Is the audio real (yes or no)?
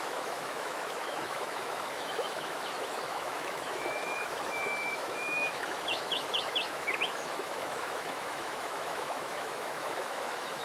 no